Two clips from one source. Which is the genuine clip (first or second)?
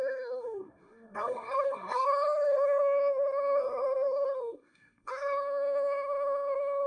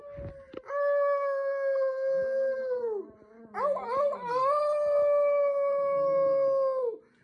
second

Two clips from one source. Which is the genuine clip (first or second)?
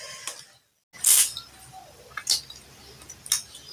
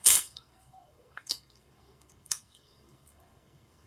first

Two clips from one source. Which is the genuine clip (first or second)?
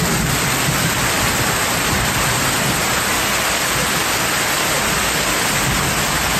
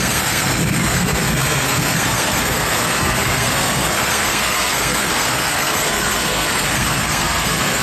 first